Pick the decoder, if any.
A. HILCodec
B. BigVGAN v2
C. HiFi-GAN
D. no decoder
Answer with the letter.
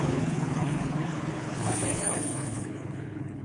A